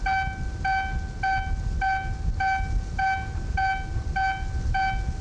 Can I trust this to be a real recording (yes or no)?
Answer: yes